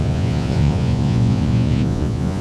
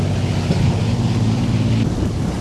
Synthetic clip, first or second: first